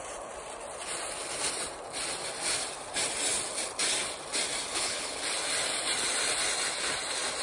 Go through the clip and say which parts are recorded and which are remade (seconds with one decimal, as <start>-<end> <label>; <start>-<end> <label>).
0.0-4.7 recorded; 4.7-5.2 remade; 5.2-7.4 recorded